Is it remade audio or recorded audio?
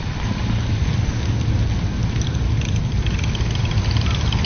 recorded